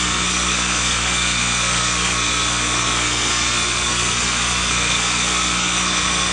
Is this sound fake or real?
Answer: fake